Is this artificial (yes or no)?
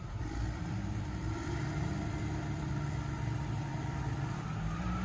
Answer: yes